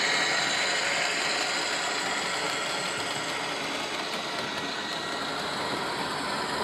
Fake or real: real